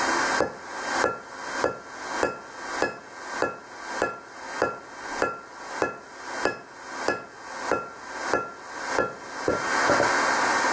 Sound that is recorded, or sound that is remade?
recorded